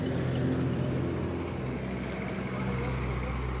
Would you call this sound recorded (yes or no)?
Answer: yes